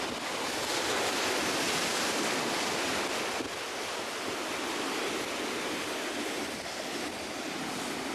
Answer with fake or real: real